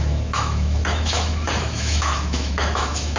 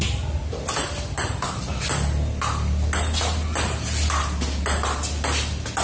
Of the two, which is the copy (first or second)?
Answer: first